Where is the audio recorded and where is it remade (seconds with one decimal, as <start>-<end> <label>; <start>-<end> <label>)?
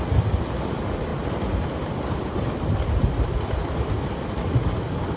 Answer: 0.0-1.1 recorded; 1.1-4.2 remade; 4.2-5.2 recorded